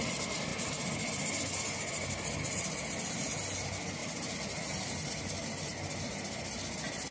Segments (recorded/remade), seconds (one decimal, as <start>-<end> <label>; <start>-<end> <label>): 0.0-7.1 recorded